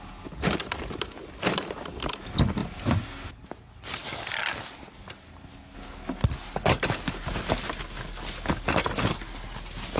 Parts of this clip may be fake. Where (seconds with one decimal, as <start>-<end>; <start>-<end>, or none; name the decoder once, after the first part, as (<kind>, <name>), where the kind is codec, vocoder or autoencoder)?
none